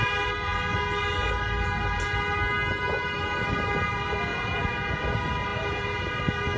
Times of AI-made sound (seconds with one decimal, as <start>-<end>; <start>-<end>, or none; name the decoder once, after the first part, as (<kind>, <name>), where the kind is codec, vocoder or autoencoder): 4.3-4.9 (vocoder, Vocos); 5.5-6.1